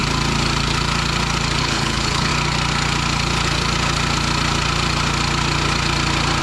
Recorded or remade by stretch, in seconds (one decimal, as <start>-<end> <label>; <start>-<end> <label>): 0.0-1.6 recorded; 1.6-2.3 remade; 2.3-6.4 recorded